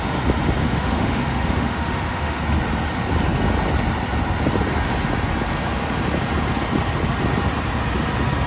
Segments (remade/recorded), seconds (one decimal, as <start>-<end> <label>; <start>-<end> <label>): 0.0-0.6 recorded; 0.6-2.4 remade; 2.4-8.5 recorded